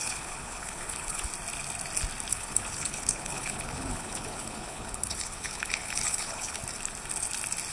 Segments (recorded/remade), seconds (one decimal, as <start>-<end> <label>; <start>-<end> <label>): 0.0-1.3 remade; 1.3-2.3 recorded; 2.3-6.6 remade; 6.6-7.7 recorded